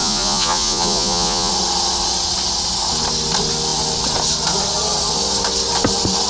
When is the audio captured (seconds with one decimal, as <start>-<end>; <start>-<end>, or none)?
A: 1.5-6.3